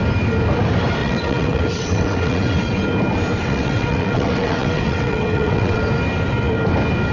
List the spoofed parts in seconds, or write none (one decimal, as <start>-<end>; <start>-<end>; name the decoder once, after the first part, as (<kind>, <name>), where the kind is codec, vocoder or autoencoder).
1.0-2.8 (vocoder, WaveNeXt); 3.4-5.8